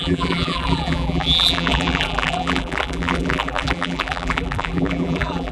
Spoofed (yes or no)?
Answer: yes